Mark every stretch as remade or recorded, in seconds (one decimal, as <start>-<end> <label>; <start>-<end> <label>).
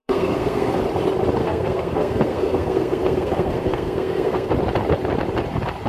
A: 0.0-0.8 remade; 0.8-1.4 recorded; 1.4-4.5 remade; 4.5-5.9 recorded